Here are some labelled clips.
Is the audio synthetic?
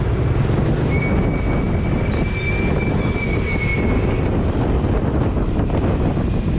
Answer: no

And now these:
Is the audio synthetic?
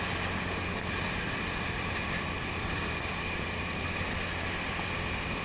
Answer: no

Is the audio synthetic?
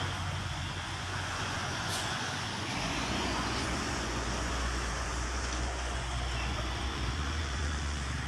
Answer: yes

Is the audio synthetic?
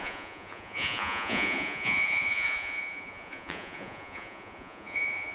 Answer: yes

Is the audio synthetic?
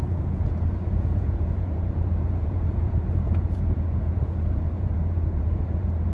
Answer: yes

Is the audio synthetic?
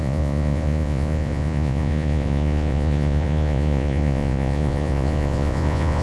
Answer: yes